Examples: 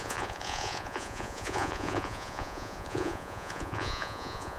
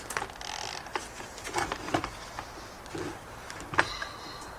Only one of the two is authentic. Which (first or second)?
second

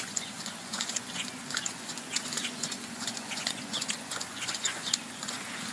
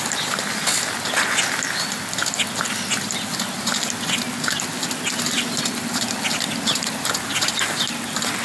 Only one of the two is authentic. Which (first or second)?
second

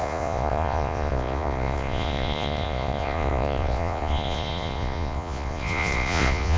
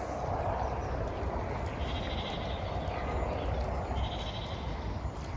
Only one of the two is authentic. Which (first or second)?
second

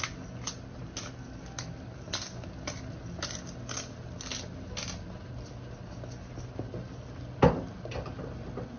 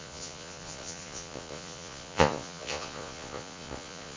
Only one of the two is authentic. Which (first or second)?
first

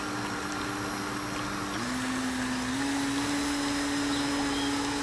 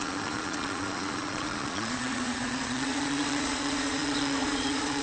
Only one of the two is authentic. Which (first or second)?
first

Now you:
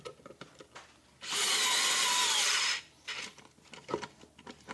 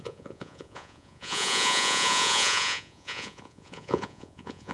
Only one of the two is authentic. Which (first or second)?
first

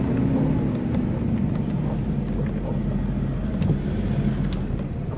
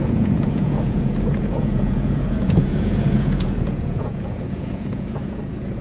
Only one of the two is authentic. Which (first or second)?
first